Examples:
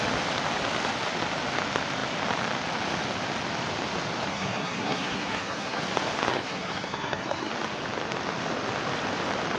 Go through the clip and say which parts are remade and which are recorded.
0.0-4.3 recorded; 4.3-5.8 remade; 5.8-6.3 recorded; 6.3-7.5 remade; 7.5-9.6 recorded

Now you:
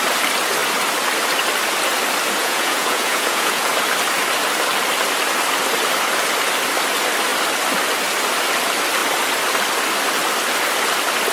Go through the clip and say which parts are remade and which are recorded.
0.0-2.4 recorded; 2.4-3.7 remade; 3.7-11.3 recorded